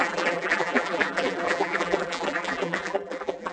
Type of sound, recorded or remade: remade